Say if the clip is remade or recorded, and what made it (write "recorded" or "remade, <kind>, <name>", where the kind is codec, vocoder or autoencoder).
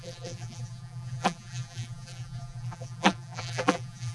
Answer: remade, vocoder, BigVGAN v2